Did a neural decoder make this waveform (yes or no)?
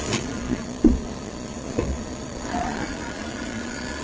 yes